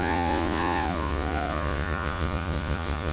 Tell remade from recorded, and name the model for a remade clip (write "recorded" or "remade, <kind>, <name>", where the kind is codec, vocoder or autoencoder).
remade, vocoder, Vocos